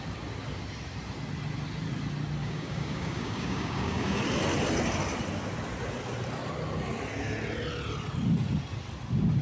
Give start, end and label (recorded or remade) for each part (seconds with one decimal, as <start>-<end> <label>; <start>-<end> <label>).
0.0-2.4 recorded; 2.4-4.2 remade; 4.2-9.4 recorded